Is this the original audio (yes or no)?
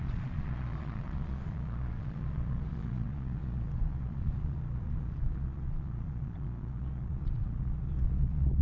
no